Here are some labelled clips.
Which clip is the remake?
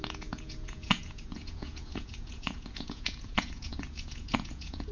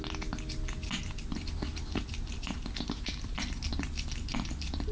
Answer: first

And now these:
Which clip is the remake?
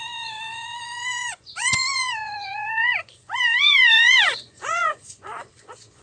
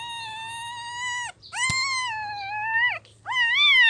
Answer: first